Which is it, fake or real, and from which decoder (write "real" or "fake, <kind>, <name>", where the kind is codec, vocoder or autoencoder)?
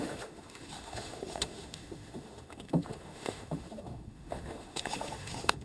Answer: fake, autoencoder, DAC-VAE